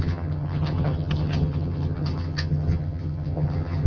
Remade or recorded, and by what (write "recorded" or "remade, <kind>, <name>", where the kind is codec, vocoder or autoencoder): remade, vocoder, HiFi-GAN